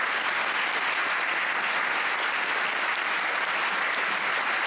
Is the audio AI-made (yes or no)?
no